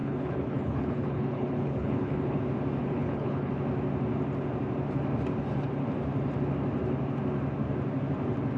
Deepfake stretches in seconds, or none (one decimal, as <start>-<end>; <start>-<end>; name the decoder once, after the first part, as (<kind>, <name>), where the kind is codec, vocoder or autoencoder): 0.0-2.4 (codec, HILCodec); 2.8-3.5